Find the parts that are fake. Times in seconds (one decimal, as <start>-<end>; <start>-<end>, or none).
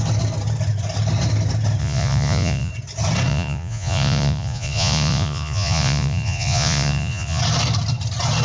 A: 1.8-2.7; 3.3-7.4